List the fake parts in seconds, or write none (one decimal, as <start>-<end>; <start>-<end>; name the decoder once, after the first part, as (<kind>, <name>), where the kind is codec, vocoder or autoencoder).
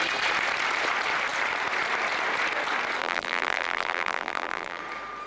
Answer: 3.0-4.8 (vocoder, BigVGAN v2)